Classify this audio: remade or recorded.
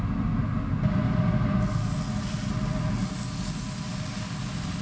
recorded